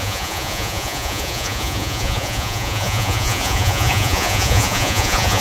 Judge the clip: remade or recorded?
remade